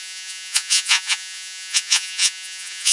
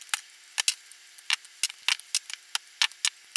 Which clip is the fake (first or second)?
first